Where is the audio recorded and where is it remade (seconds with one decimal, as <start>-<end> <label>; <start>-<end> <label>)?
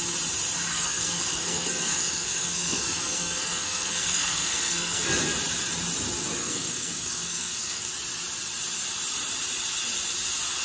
0.0-0.7 recorded; 0.7-5.1 remade; 5.1-6.4 recorded; 6.4-7.9 remade; 7.9-10.6 recorded